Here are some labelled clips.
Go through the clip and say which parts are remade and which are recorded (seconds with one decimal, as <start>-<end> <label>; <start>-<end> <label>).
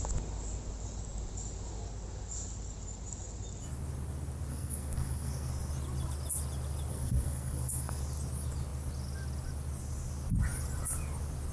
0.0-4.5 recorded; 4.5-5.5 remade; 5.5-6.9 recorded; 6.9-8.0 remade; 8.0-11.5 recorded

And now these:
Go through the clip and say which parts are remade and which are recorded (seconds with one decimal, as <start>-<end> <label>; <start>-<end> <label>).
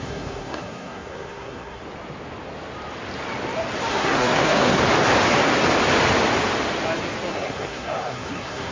0.0-1.8 remade; 1.8-3.9 recorded; 3.9-4.8 remade; 4.8-7.3 recorded; 7.3-8.7 remade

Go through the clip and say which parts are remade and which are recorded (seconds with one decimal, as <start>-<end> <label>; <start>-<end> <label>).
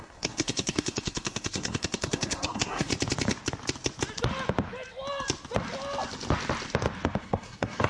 0.0-2.9 remade; 2.9-7.2 recorded; 7.2-7.9 remade